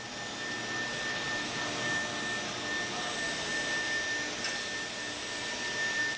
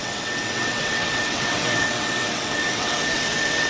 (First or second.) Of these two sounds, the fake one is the second